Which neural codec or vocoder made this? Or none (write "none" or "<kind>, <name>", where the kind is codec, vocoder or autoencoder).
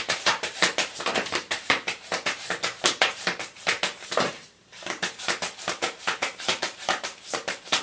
vocoder, BigVGAN v2